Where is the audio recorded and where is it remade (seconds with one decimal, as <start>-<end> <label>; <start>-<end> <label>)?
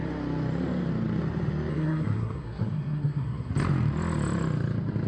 0.0-1.7 recorded; 1.7-3.5 remade; 3.5-5.1 recorded